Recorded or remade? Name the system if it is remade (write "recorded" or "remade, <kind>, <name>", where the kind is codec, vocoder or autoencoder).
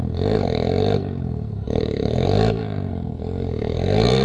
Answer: remade, codec, SNAC